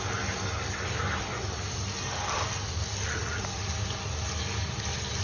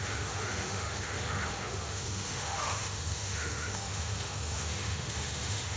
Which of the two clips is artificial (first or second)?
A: second